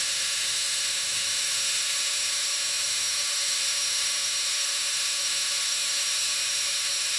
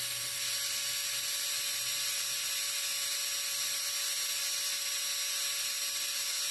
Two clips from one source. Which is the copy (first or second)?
first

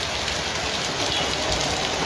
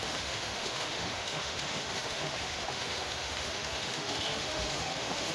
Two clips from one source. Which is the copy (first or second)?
second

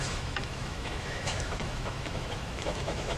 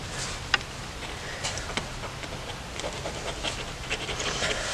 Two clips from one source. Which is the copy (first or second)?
first